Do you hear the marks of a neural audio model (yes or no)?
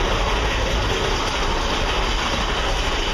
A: no